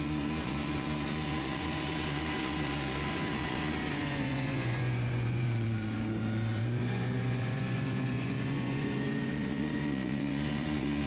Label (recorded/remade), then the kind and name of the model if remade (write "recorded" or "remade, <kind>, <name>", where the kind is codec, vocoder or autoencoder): remade, vocoder, Vocos